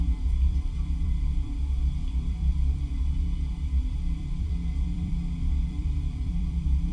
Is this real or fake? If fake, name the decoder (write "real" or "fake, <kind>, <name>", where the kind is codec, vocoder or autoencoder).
fake, vocoder, BigVGAN v2